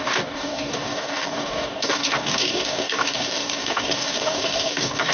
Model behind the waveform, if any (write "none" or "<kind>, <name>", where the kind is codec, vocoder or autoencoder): codec, DAC